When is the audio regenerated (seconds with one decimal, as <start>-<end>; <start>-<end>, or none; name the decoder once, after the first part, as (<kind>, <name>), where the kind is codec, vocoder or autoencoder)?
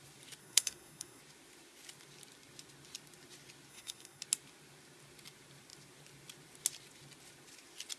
0.4-1.2 (codec, SNAC); 3.7-4.2